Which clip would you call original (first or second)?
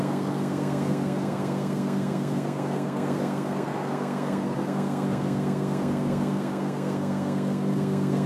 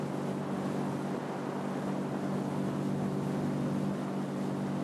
second